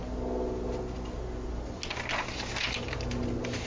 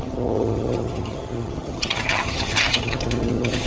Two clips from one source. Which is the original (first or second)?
first